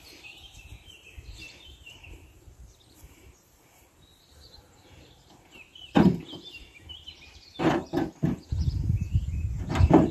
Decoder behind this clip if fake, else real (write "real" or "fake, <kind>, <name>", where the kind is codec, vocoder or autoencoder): fake, vocoder, BigVGAN v2